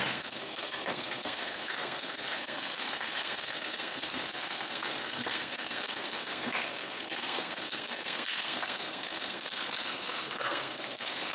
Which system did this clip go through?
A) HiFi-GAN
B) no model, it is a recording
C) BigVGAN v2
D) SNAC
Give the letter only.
D